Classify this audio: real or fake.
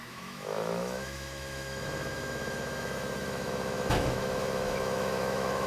fake